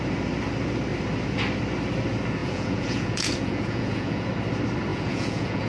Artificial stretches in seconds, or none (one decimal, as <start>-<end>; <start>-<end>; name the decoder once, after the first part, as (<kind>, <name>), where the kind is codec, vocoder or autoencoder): 2.4-4.3 (vocoder, Vocos); 4.9-5.7